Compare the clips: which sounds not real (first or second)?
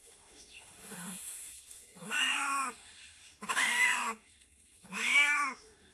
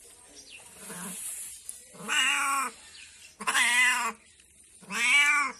first